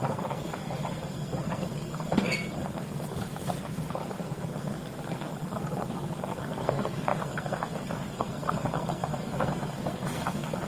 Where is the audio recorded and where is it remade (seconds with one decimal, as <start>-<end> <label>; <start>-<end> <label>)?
0.0-10.7 remade